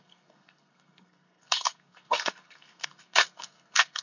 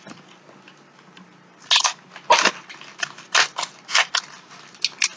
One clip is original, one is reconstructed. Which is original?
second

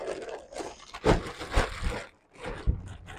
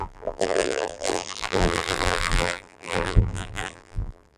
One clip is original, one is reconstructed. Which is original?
first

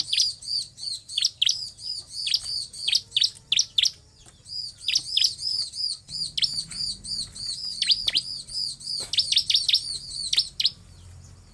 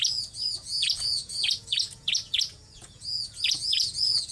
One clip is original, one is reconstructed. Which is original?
first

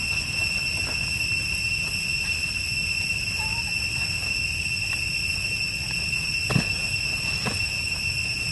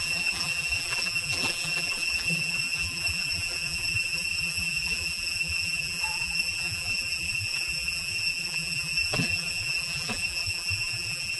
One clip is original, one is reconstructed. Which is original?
first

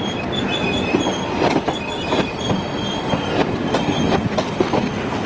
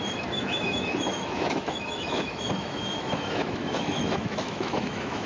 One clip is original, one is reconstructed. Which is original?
first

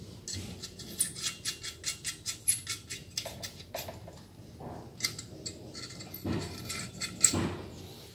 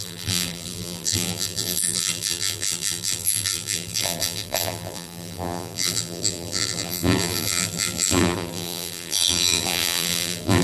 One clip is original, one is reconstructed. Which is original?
first